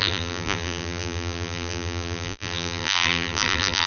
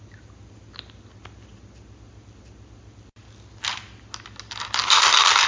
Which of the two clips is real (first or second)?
second